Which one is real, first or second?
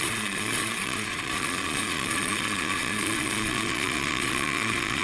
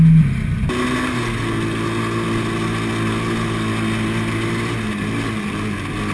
second